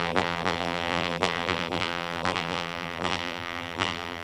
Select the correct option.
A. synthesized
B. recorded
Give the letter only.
A